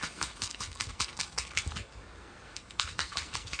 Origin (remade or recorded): remade